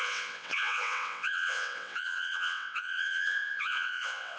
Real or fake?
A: fake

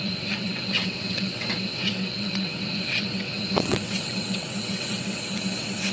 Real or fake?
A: fake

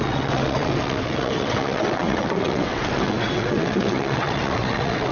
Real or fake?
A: fake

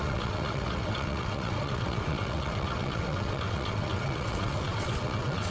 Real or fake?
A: fake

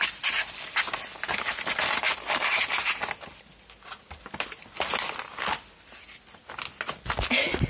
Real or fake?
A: real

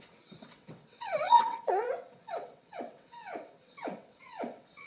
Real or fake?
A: fake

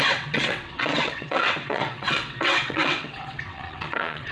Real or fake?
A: fake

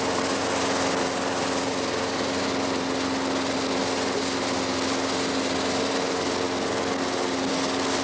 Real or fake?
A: real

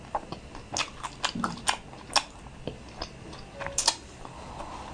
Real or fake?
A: real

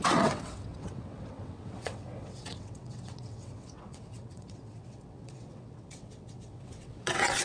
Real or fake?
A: fake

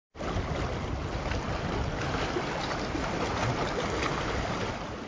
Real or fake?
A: real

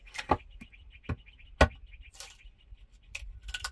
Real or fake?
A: real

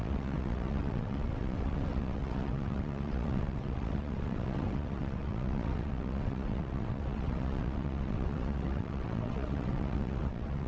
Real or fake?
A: fake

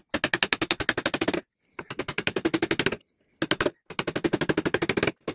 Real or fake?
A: real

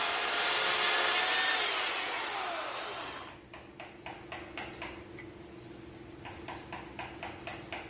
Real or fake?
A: real